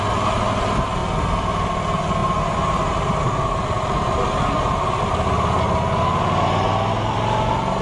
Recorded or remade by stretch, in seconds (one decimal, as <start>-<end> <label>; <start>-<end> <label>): 0.0-7.8 recorded